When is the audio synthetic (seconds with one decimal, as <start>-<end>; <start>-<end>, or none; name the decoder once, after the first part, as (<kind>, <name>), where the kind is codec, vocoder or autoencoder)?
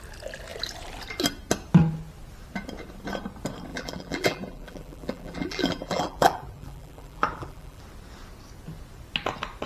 3.7-7.8 (vocoder, BigVGAN v2)